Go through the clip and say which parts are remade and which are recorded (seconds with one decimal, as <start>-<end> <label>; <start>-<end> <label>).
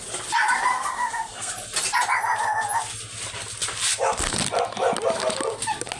0.0-0.7 recorded; 0.7-1.5 remade; 1.5-6.0 recorded